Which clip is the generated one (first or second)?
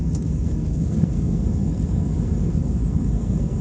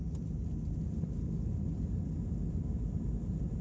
first